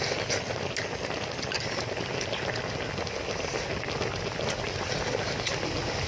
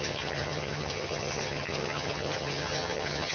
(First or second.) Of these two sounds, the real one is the first